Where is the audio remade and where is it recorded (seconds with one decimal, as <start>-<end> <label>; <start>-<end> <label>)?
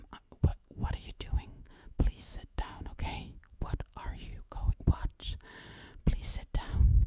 0.0-0.5 recorded; 0.5-4.8 remade; 4.8-7.1 recorded